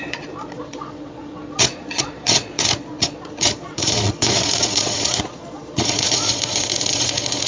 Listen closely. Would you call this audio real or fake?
fake